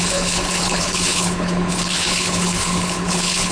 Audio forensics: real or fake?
fake